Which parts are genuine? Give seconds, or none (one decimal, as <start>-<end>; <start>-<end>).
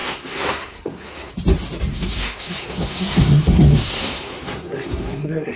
1.3-1.9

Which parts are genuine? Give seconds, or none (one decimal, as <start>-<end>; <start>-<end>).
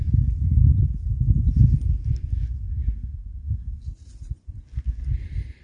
0.0-2.6; 3.8-5.6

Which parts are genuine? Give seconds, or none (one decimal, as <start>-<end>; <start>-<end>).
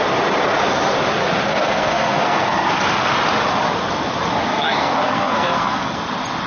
0.0-1.5; 2.7-4.5; 6.0-6.5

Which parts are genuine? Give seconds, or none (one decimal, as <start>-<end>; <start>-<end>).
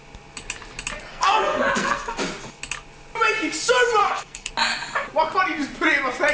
0.0-1.1; 2.2-4.0; 4.5-6.3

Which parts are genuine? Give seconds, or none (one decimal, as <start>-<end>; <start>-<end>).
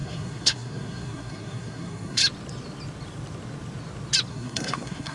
2.2-4.3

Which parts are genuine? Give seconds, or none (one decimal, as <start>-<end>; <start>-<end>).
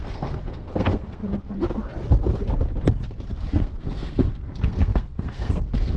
1.2-3.5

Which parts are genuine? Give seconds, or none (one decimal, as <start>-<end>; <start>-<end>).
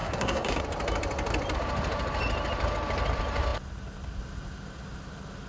0.6-5.5